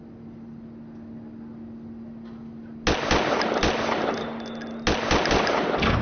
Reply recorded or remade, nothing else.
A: recorded